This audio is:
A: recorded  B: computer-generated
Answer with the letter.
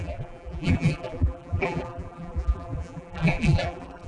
B